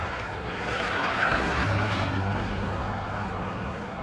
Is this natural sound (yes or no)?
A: no